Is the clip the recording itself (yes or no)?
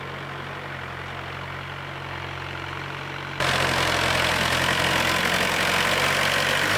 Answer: yes